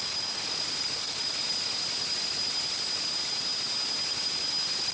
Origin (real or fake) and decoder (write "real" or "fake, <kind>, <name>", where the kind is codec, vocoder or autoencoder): real